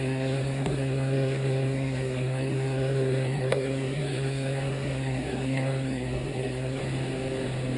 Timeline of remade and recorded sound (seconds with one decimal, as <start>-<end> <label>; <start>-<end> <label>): 0.0-6.8 remade; 6.8-7.8 recorded